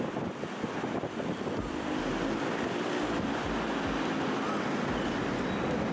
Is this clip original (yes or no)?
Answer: yes